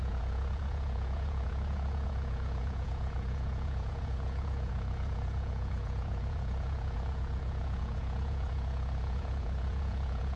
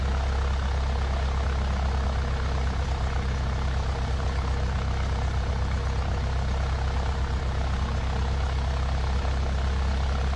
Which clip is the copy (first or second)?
first